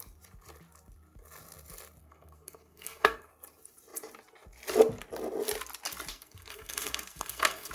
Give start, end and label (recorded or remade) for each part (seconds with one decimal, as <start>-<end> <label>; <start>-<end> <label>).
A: 0.0-2.0 recorded; 2.0-3.3 remade; 3.3-6.1 recorded; 6.1-7.7 remade